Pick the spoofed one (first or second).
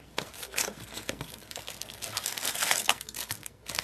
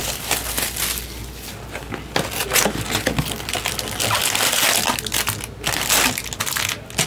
first